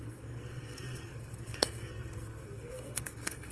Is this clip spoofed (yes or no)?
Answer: yes